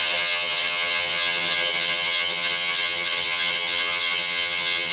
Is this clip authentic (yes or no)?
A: no